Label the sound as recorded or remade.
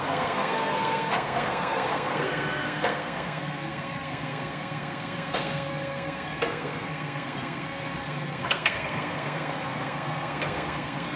remade